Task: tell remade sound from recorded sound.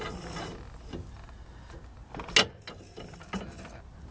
recorded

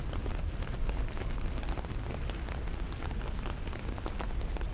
recorded